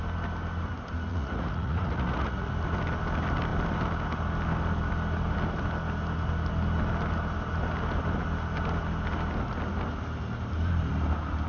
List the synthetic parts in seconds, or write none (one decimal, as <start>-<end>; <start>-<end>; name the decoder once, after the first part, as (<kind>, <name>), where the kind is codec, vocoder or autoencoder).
1.1-2.5 (vocoder, Vocos)